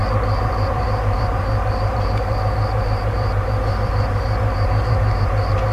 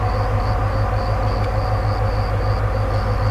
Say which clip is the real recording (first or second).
second